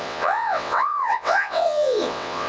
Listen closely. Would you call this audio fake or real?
fake